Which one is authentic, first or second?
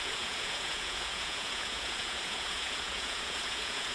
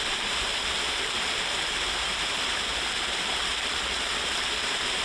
second